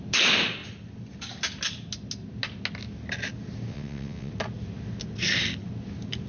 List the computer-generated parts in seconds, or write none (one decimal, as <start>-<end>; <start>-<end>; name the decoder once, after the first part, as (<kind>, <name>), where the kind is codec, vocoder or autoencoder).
3.7-4.3 (vocoder, WaveNeXt)